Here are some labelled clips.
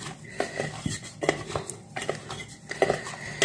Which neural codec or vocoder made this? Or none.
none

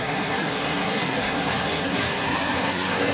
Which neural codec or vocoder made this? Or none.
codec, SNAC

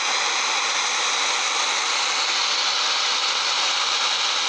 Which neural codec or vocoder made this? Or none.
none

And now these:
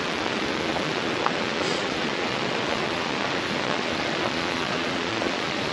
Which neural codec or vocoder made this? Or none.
vocoder, Vocos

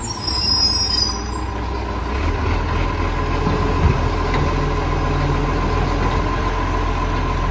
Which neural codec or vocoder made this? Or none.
none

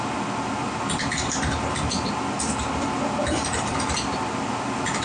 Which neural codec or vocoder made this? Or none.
none